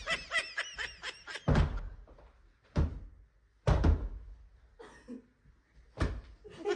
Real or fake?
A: real